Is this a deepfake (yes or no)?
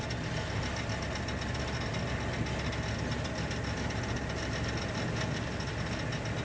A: no